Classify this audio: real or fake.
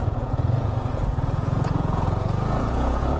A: fake